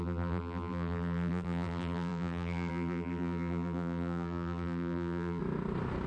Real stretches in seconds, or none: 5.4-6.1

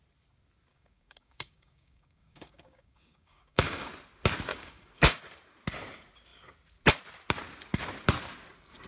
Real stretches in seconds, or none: 0.0-0.7; 3.9-4.5; 5.2-8.9

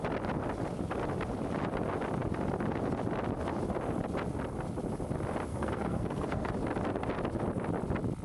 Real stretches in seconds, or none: 0.0-5.5; 6.5-8.2

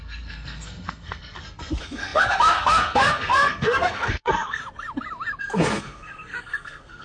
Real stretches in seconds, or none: 4.6-5.4